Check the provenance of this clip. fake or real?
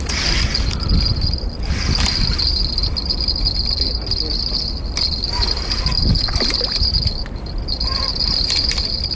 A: real